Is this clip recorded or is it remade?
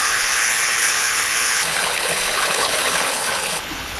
remade